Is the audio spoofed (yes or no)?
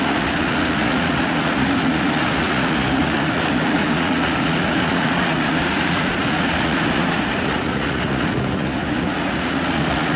yes